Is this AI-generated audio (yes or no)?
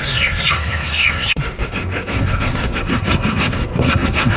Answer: yes